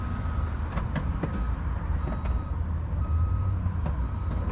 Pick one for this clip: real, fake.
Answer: real